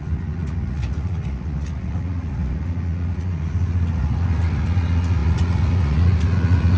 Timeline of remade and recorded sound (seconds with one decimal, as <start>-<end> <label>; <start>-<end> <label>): 0.0-6.8 remade